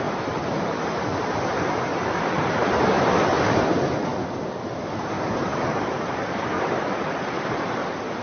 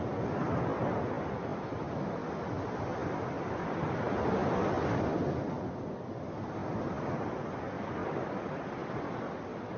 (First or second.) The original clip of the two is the second